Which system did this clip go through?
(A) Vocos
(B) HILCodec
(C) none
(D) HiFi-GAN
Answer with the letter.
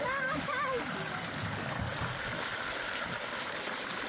C